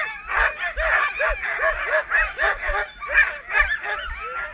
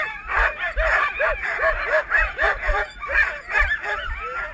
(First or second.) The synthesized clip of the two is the second